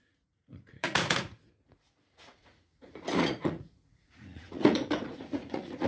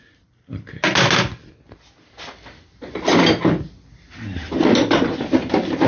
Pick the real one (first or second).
second